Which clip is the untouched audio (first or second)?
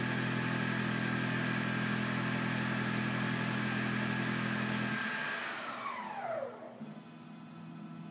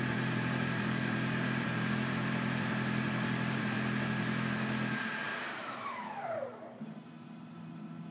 first